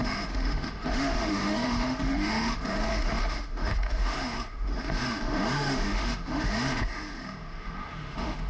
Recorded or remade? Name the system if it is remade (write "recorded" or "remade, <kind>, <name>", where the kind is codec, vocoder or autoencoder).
remade, autoencoder, DAC-VAE